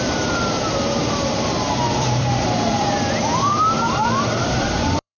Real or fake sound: fake